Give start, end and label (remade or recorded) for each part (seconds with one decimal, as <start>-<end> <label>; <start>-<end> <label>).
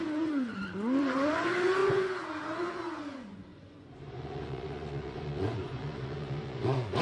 0.0-7.0 remade